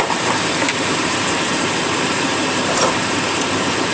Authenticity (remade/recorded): remade